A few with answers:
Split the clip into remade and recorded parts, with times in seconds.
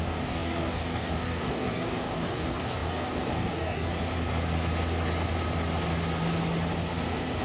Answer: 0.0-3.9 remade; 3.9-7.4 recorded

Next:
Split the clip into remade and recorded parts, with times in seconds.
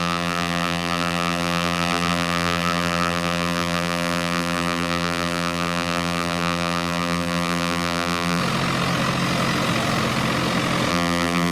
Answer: 0.0-8.4 remade; 8.4-10.9 recorded; 10.9-11.5 remade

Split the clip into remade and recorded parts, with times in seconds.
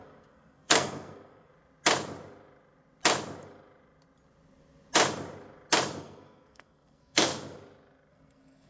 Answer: 0.0-1.5 remade; 1.5-6.0 recorded; 6.0-7.3 remade; 7.3-8.1 recorded; 8.1-8.7 remade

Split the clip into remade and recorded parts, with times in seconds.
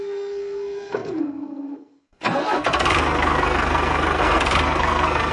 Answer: 0.0-5.3 remade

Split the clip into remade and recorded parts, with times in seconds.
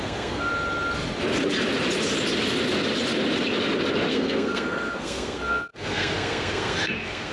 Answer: 0.0-0.5 remade; 0.5-4.1 recorded; 4.1-7.3 remade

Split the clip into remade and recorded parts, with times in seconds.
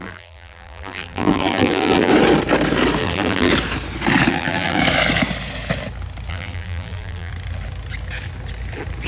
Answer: 0.0-2.1 remade; 2.1-3.0 recorded; 3.0-3.5 remade; 3.5-4.3 recorded; 4.3-4.8 remade; 4.8-6.3 recorded; 6.3-7.3 remade; 7.3-9.1 recorded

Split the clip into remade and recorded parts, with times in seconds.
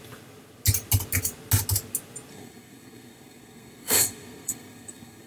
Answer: 0.0-2.3 recorded; 2.3-5.3 remade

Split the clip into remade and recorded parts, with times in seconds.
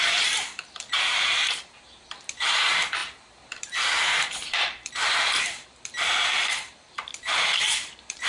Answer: 0.0-8.3 remade